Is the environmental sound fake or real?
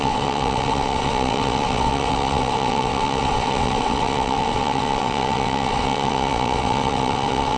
fake